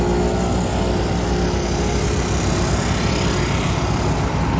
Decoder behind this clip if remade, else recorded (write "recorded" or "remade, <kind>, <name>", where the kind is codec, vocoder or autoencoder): recorded